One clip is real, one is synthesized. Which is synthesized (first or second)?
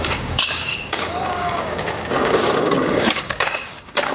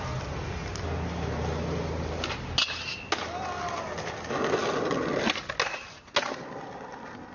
first